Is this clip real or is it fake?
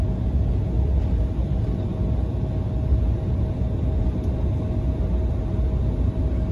real